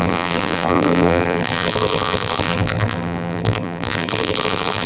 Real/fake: fake